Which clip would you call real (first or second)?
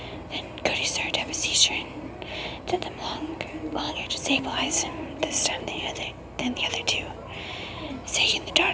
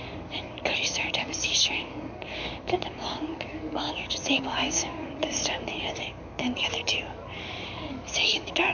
first